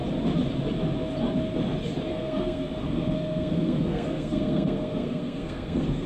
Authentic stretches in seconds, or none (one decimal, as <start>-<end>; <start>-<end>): 0.0-2.1